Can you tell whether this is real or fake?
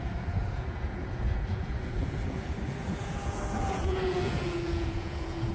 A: fake